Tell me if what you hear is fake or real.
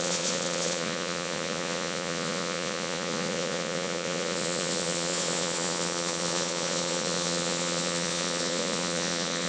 fake